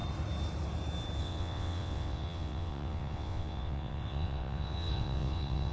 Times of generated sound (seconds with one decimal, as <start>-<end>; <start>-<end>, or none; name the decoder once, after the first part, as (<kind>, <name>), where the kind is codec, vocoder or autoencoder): 1.2-5.7 (vocoder, WaveNeXt)